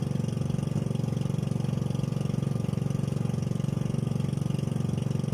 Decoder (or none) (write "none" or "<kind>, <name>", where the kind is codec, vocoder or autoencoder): none